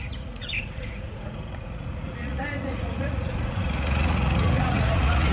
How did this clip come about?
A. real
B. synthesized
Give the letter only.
B